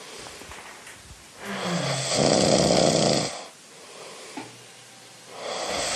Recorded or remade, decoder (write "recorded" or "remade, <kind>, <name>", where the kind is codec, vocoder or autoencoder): recorded